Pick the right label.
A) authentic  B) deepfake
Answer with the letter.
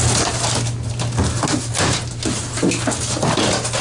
A